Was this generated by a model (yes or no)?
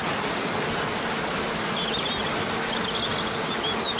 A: no